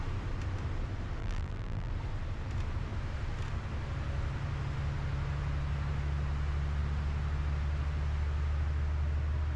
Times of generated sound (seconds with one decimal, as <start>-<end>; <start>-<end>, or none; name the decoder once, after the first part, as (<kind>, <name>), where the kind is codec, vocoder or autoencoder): 1.2-1.9 (vocoder, BigVGAN v2)